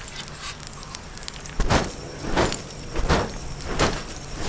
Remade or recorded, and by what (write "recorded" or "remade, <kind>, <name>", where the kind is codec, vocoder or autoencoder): recorded